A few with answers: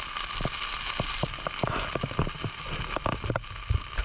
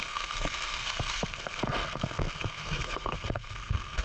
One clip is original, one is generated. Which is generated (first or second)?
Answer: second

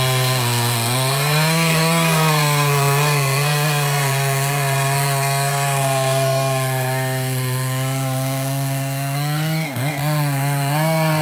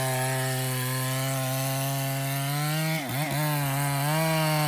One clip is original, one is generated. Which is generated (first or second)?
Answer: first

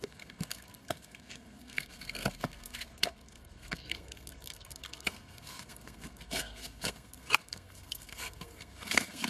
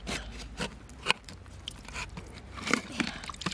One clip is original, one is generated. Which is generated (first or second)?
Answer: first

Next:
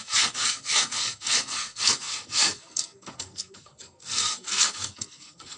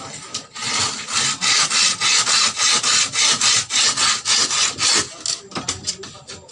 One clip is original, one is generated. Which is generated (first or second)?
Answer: first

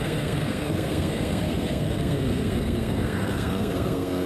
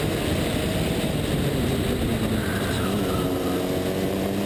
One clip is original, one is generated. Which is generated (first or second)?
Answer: first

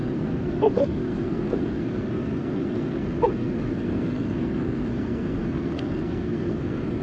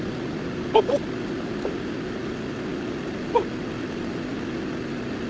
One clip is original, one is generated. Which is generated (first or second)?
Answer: first